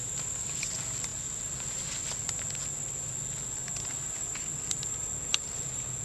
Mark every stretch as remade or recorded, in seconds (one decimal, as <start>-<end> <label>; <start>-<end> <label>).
0.0-6.0 recorded